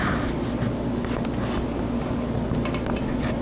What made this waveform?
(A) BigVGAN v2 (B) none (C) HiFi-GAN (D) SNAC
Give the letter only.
B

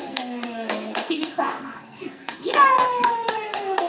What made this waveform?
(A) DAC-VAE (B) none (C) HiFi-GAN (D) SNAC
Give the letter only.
D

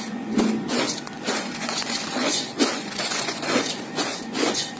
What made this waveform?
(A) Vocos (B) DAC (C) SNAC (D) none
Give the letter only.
A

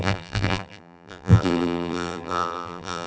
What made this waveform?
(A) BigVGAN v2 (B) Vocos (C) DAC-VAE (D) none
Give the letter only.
A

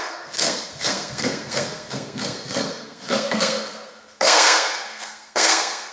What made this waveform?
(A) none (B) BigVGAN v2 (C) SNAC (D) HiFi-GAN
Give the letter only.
C